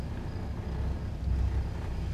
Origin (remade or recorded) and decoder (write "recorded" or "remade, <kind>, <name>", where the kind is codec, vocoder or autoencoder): recorded